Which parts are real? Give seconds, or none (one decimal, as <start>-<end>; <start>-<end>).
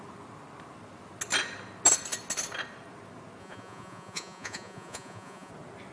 0.0-3.4; 5.5-5.9